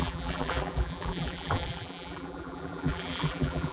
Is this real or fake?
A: fake